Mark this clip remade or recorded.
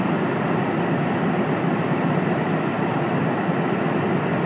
recorded